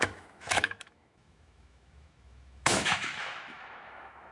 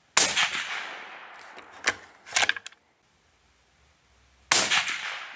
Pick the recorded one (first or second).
second